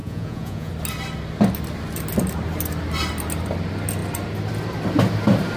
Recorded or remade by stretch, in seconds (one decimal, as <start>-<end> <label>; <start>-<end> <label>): 0.0-0.7 remade; 0.7-5.6 recorded